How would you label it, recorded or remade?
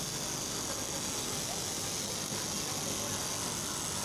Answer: recorded